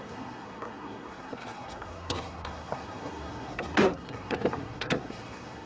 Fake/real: fake